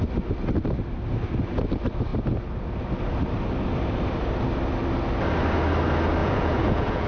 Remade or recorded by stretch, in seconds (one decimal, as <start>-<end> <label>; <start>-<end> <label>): 0.0-6.2 recorded; 6.2-7.1 remade